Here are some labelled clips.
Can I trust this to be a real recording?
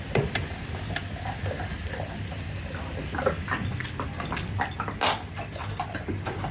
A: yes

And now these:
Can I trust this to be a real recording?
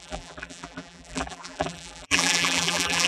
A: no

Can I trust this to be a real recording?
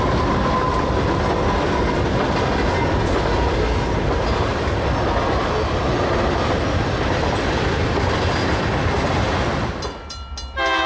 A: yes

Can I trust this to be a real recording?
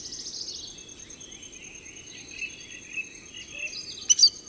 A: yes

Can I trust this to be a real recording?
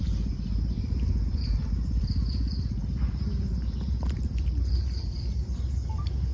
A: no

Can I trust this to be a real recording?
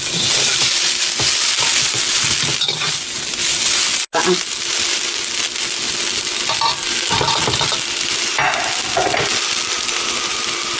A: yes